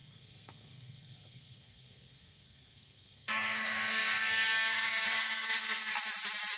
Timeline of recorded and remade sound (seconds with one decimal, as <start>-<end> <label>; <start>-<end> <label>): 0.0-5.9 remade; 5.9-6.6 recorded